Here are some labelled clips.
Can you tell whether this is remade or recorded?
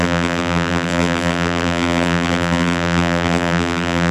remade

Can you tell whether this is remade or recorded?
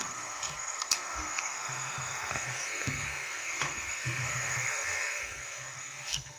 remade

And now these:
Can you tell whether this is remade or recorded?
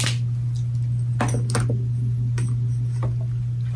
recorded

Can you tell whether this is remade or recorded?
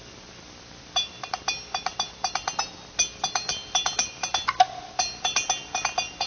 recorded